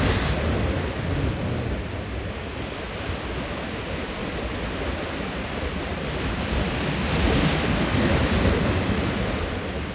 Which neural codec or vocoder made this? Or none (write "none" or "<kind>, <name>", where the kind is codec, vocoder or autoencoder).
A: none